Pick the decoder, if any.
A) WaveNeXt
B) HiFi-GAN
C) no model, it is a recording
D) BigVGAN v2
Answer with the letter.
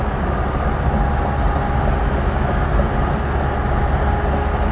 C